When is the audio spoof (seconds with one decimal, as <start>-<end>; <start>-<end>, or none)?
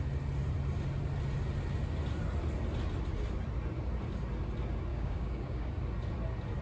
4.9-5.7